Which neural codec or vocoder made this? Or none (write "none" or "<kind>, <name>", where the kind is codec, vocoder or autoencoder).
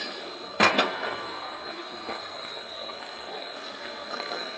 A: codec, SNAC